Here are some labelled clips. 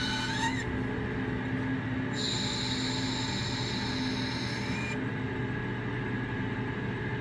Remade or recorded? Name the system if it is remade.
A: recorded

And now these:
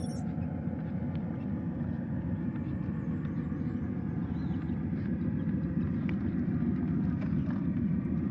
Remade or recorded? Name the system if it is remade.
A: remade, vocoder, BigVGAN v2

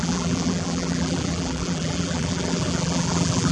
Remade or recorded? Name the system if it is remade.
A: remade, vocoder, BigVGAN v2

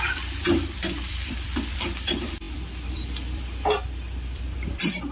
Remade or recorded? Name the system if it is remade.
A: remade, vocoder, BigVGAN v2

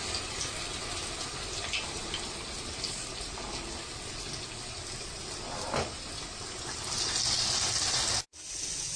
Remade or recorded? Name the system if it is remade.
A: recorded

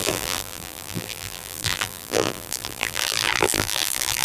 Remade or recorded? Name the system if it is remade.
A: remade, vocoder, BigVGAN v2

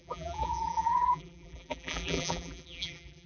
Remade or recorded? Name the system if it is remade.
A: remade, vocoder, BigVGAN v2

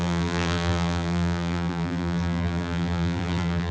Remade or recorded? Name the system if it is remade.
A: remade, vocoder, BigVGAN v2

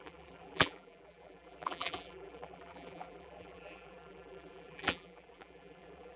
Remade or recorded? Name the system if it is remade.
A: remade, vocoder, BigVGAN v2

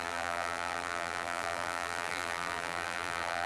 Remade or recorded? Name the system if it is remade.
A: remade, vocoder, BigVGAN v2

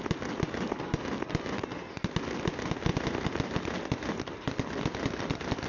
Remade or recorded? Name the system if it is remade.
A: recorded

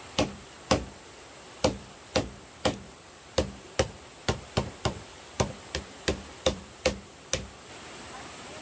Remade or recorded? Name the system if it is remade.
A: remade, vocoder, BigVGAN v2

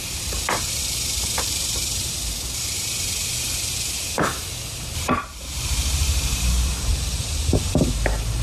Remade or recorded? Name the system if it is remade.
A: remade, vocoder, BigVGAN v2